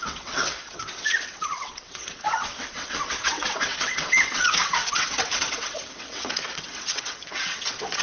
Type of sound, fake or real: fake